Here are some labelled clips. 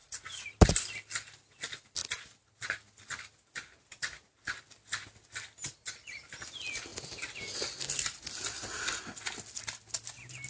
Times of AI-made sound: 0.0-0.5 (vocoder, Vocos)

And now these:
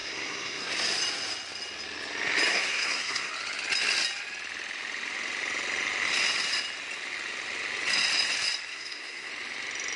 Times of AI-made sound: 0.0-0.7 (codec, SNAC); 2.5-3.3; 8.7-9.3

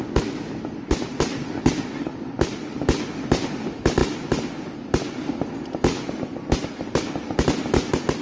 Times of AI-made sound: none

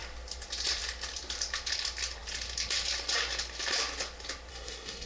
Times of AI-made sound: 4.5-5.1 (codec, SNAC)

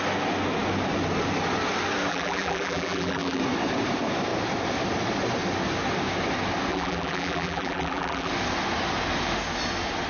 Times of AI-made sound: 2.1-3.4 (vocoder, BigVGAN v2); 6.7-8.3